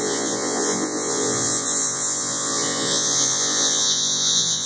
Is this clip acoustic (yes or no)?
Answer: no